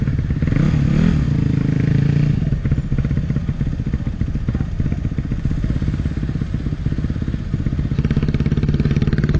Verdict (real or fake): real